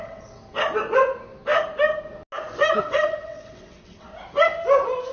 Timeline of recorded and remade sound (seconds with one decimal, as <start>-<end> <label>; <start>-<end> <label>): 0.0-0.4 remade; 0.4-2.8 recorded; 2.8-4.1 remade; 4.1-5.1 recorded